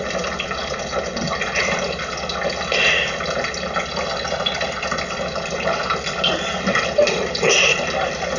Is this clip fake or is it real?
real